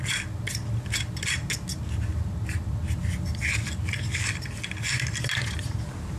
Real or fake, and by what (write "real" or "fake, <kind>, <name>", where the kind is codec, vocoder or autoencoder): real